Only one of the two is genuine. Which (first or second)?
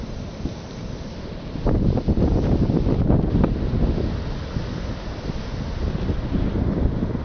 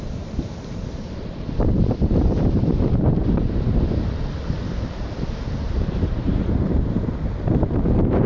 first